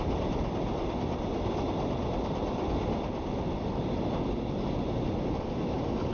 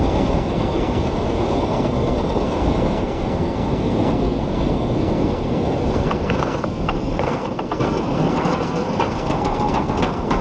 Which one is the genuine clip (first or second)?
first